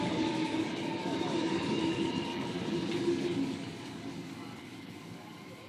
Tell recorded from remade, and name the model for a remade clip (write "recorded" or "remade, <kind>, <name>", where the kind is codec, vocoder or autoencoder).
remade, codec, DAC